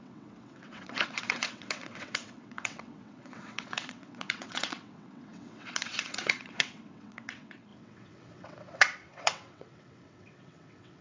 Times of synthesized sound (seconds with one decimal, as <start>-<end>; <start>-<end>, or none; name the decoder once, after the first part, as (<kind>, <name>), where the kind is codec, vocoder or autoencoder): 0.0-11.0 (vocoder, WaveNeXt)